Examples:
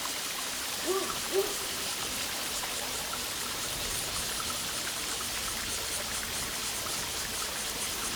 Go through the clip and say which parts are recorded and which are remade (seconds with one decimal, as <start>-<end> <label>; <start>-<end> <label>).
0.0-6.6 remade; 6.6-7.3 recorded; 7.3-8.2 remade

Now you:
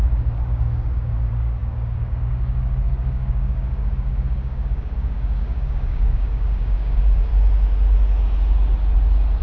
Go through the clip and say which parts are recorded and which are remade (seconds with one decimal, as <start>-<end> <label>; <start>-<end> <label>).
0.0-7.3 remade; 7.3-9.4 recorded

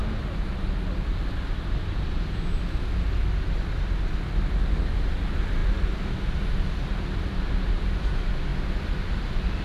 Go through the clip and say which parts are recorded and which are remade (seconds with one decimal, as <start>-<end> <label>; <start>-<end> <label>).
0.0-9.6 recorded

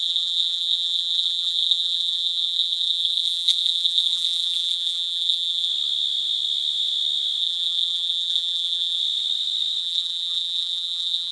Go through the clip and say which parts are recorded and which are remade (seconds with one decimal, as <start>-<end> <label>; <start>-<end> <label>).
0.0-5.7 remade; 5.7-7.4 recorded; 7.4-9.0 remade; 9.0-9.8 recorded; 9.8-11.3 remade

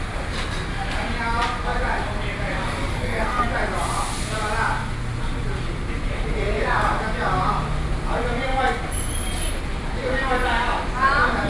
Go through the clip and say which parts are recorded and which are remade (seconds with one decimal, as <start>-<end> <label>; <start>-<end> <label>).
0.0-2.9 recorded; 2.9-3.5 remade; 3.5-11.5 recorded

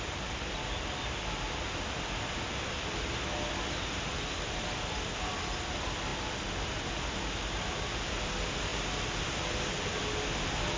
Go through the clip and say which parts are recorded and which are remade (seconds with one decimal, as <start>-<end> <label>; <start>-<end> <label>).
0.0-10.8 recorded